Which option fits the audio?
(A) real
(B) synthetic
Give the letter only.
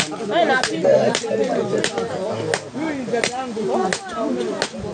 A